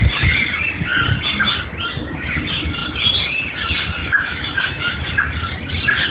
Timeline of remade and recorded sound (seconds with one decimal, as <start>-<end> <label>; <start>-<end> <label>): 0.0-4.0 recorded; 4.0-5.0 remade; 5.0-6.1 recorded